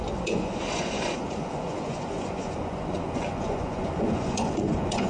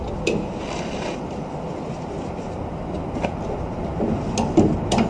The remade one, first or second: first